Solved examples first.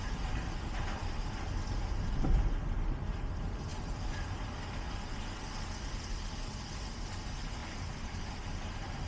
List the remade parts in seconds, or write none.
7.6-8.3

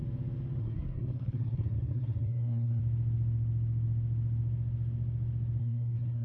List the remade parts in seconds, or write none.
0.6-2.8; 5.6-6.2

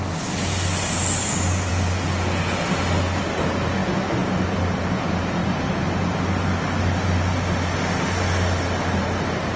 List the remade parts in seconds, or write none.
none

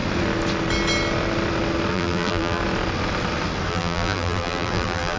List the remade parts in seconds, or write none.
1.9-2.6; 3.7-5.2

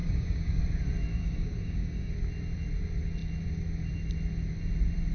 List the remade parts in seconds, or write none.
0.0-0.6; 1.1-2.1

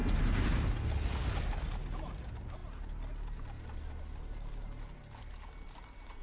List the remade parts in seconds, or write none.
none

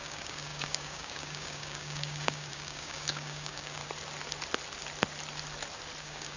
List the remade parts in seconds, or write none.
0.0-3.8; 6.0-6.4

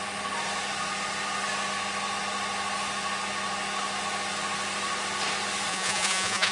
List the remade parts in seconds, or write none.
5.7-6.5